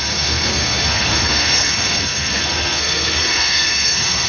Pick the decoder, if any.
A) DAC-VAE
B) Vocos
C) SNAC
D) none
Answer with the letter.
C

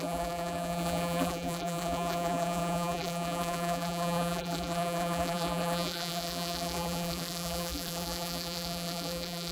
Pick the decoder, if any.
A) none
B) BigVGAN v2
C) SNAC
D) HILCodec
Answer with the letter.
B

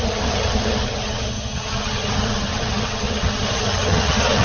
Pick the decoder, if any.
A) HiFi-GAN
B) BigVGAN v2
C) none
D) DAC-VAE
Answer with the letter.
A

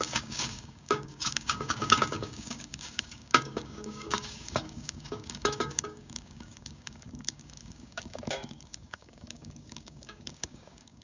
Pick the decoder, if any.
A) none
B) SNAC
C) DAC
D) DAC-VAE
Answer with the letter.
C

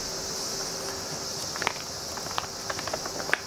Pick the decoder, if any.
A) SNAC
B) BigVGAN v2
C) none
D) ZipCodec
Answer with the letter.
C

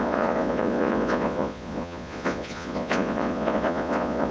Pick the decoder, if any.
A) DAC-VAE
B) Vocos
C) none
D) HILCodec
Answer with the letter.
B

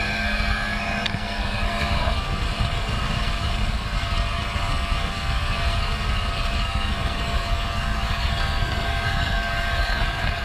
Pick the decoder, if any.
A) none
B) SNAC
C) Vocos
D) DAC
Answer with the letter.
B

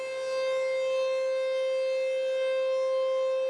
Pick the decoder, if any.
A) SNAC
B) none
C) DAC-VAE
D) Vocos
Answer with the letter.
B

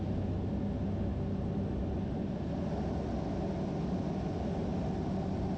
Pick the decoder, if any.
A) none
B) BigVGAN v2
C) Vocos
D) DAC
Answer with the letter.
A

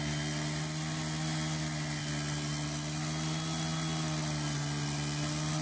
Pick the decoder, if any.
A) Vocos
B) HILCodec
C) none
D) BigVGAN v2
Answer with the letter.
C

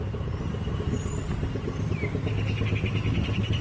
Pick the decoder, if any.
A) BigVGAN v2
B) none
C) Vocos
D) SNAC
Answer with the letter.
B